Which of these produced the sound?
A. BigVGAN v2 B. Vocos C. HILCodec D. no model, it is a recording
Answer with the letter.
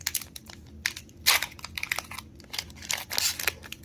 D